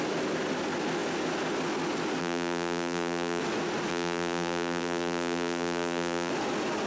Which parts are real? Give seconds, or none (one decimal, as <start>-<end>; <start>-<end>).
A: 0.0-2.2; 3.4-3.9; 6.3-6.9